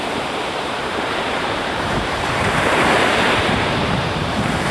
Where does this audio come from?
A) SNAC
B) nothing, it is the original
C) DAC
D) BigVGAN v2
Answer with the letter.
D